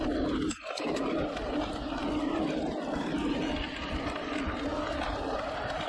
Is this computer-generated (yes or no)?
no